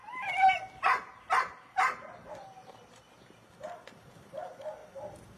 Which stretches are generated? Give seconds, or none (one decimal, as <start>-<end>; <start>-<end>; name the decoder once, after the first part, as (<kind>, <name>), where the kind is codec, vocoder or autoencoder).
0.0-0.6 (vocoder, BigVGAN v2); 2.6-4.1; 4.8-5.4